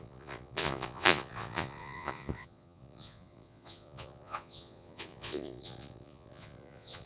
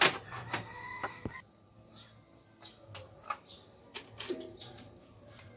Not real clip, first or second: first